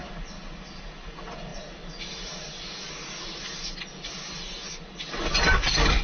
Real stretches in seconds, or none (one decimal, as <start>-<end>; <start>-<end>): 0.0-6.0